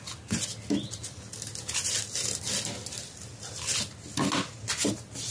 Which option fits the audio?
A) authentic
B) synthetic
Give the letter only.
A